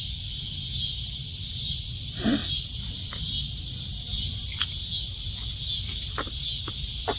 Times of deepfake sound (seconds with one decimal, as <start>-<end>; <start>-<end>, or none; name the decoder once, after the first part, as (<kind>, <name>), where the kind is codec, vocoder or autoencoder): none